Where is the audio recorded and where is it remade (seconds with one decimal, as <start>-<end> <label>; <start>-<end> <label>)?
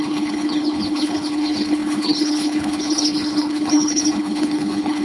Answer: 0.0-5.0 remade